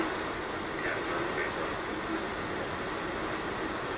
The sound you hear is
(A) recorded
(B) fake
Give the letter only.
A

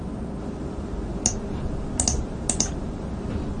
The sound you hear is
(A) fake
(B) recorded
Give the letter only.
B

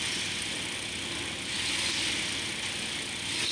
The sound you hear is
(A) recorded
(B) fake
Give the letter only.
A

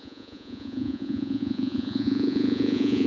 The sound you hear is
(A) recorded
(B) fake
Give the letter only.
B